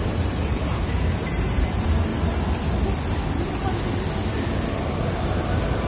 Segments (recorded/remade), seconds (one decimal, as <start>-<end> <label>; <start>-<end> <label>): 0.0-2.1 remade; 2.1-5.9 recorded